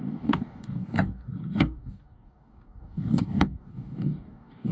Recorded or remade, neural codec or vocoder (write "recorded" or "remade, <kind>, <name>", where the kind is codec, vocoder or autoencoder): remade, codec, DAC